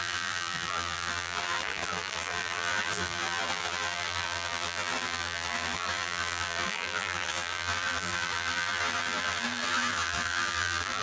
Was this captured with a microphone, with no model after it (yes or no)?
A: no